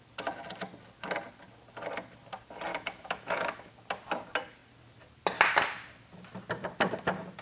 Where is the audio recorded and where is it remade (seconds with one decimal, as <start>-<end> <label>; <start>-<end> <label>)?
0.0-2.7 recorded; 2.7-3.7 remade; 3.7-7.4 recorded